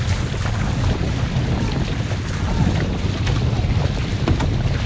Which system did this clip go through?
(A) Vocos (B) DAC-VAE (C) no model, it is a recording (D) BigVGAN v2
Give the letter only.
C